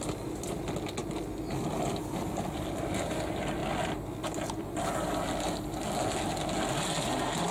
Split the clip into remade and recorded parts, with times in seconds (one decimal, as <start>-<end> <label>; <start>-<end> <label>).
0.0-7.5 recorded